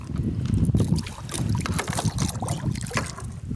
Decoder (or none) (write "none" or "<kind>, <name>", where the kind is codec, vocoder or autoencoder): none